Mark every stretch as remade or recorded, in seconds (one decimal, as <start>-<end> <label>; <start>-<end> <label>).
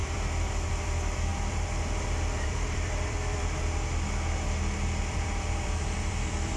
0.0-6.6 remade